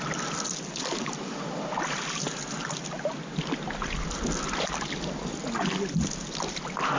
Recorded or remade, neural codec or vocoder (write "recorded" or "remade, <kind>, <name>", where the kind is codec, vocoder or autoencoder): recorded